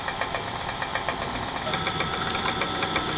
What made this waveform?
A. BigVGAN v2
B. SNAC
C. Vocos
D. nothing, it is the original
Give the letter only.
A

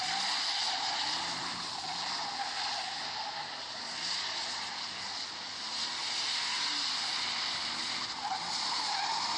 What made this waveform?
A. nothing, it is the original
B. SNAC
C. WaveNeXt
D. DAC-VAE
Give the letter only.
A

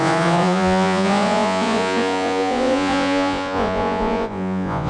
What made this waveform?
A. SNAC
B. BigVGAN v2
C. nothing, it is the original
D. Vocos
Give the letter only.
D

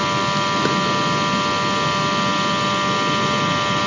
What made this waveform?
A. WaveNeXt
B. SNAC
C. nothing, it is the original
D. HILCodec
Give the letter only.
C